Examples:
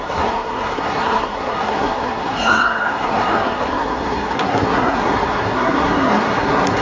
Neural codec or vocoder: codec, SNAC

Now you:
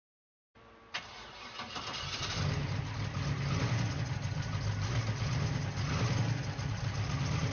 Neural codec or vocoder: none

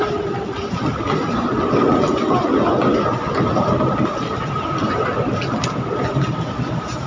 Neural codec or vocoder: none